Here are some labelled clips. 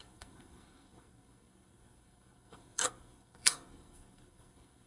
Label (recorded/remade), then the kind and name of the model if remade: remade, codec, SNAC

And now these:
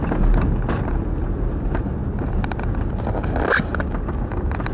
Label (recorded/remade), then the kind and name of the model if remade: recorded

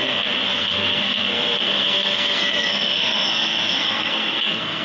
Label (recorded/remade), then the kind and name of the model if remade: remade, codec, SNAC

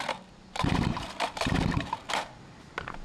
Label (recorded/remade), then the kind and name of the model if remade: recorded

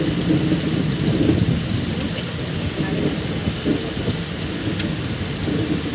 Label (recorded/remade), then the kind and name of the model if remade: recorded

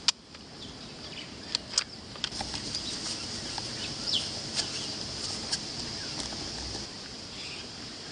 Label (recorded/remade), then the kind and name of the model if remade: recorded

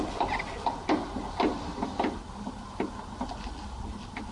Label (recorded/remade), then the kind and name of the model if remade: recorded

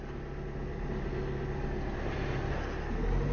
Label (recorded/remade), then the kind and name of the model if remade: recorded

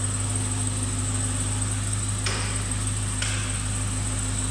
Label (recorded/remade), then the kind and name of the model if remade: recorded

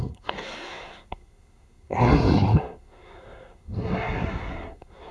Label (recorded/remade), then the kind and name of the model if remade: remade, codec, SNAC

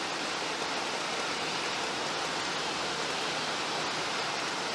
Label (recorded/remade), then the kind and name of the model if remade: recorded